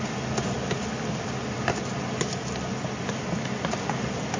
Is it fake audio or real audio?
real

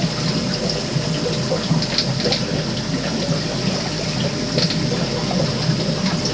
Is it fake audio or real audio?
real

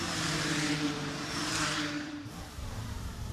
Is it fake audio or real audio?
fake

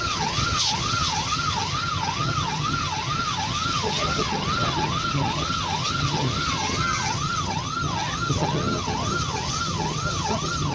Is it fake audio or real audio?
fake